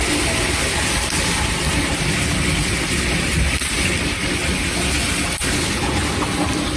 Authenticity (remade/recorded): recorded